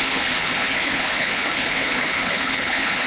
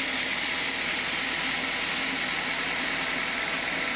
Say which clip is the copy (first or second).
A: first